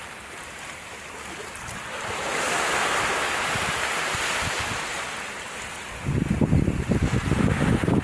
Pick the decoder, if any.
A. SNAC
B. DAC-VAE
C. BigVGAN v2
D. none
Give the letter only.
C